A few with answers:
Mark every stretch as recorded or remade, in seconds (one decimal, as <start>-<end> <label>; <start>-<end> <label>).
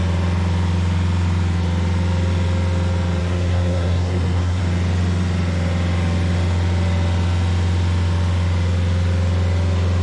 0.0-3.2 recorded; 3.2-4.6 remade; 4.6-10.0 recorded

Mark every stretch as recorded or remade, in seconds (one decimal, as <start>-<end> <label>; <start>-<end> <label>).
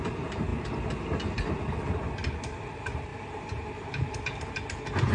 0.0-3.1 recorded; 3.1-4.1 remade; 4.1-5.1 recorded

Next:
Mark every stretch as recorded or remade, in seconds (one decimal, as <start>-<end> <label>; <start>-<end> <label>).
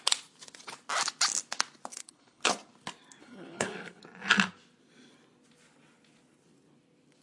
0.0-1.9 recorded; 1.9-2.5 remade; 2.5-3.2 recorded; 3.2-4.0 remade; 4.0-7.2 recorded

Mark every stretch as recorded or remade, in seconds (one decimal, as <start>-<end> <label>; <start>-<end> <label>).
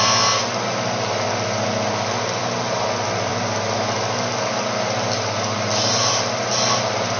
0.0-3.3 recorded; 3.3-7.2 remade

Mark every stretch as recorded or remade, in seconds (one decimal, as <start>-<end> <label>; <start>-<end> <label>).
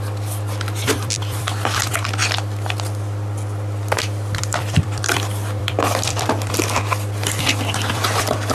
0.0-2.2 remade; 2.2-4.4 recorded; 4.4-8.5 remade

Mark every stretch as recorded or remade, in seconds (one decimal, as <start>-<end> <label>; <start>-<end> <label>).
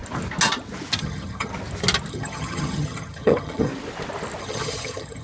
0.0-1.0 recorded; 1.0-1.5 remade; 1.5-2.1 recorded; 2.1-3.7 remade; 3.7-4.4 recorded; 4.4-5.2 remade